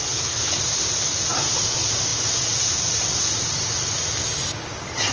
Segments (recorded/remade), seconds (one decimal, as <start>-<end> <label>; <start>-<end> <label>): 0.0-0.6 remade; 0.6-5.1 recorded